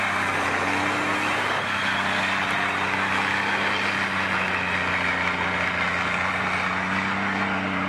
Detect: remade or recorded recorded